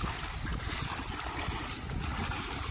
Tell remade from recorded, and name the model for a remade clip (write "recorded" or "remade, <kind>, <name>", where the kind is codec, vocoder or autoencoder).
recorded